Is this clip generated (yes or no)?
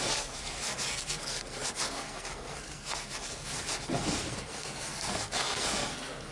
yes